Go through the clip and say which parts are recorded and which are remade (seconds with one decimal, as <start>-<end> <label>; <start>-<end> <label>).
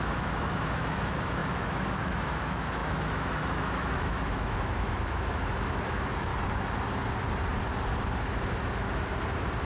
0.0-6.3 remade; 6.3-9.6 recorded